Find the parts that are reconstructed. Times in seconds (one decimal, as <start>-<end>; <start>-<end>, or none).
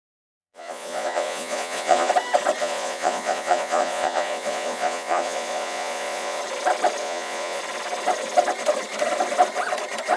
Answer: 0.4-2.1; 2.6-6.4; 7.0-7.6